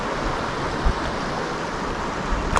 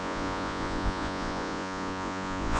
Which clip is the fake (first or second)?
second